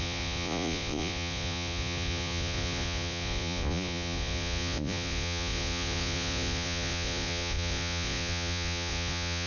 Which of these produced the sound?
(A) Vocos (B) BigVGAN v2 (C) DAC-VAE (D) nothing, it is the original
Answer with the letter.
A